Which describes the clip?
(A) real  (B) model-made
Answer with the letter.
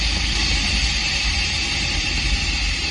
B